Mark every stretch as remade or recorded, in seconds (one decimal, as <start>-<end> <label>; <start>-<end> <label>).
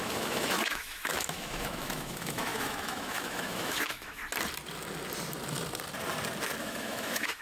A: 0.0-4.2 remade; 4.2-6.6 recorded; 6.6-7.4 remade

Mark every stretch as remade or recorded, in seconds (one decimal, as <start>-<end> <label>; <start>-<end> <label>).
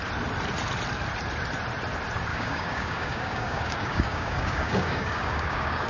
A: 0.0-2.3 recorded; 2.3-5.9 remade